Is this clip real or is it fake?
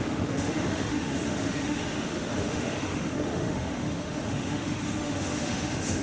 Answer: fake